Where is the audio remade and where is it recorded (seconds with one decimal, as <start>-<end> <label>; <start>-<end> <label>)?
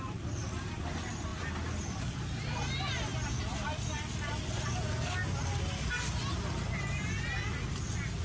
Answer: 0.0-8.2 recorded